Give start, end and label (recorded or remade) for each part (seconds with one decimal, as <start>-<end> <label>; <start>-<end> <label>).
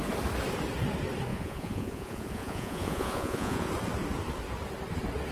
0.0-1.3 recorded; 1.3-3.7 remade; 3.7-5.3 recorded